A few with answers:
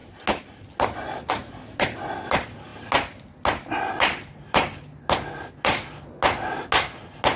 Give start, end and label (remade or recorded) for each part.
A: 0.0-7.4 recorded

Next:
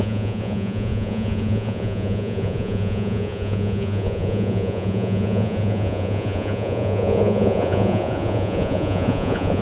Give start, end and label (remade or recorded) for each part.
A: 0.0-9.6 remade

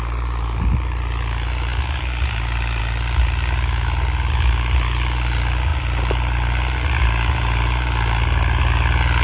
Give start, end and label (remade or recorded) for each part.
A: 0.0-9.2 recorded